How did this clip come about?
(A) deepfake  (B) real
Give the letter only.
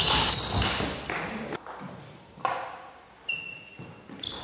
B